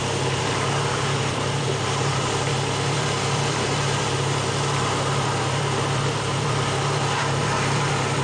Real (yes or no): no